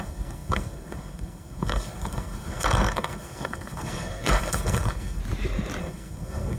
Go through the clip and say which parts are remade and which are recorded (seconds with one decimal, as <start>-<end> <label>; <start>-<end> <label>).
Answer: 0.0-5.2 remade; 5.2-5.8 recorded; 5.8-6.6 remade